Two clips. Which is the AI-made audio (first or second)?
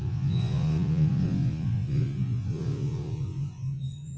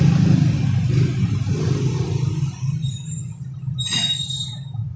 first